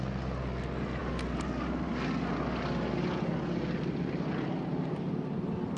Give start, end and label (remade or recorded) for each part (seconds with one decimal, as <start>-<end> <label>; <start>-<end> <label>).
0.0-5.8 recorded